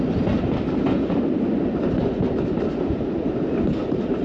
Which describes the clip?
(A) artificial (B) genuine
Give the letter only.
B